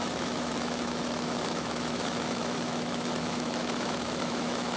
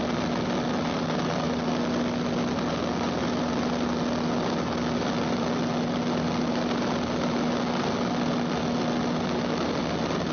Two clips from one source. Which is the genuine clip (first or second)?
second